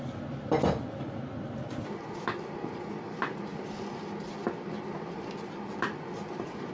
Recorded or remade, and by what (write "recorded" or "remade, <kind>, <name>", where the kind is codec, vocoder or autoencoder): recorded